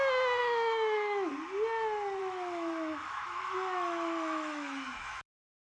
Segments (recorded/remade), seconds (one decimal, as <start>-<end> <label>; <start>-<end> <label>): 0.0-0.4 recorded; 0.4-1.3 remade; 1.3-2.2 recorded; 2.2-5.6 remade